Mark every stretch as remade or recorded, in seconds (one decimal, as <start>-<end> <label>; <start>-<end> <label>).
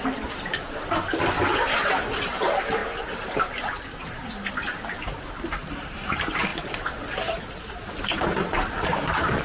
0.0-9.4 recorded